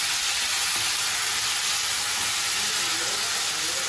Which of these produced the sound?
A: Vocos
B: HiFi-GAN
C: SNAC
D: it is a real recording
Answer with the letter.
D